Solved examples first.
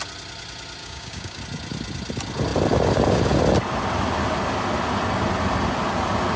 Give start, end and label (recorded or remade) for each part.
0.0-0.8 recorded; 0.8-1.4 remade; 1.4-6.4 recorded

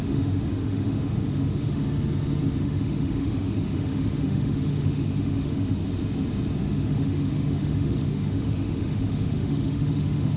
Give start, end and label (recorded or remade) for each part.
0.0-1.8 remade; 1.8-2.6 recorded; 2.6-5.8 remade; 5.8-6.6 recorded; 6.6-10.4 remade

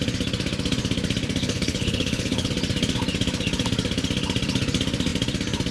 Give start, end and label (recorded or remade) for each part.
0.0-1.4 recorded; 1.4-2.5 remade; 2.5-5.7 recorded

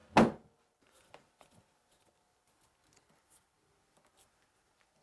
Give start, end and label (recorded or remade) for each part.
0.0-5.0 recorded

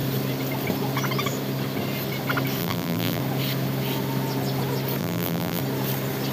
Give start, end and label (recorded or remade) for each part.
0.0-2.6 recorded; 2.6-3.2 remade; 3.2-5.0 recorded; 5.0-5.6 remade; 5.6-6.3 recorded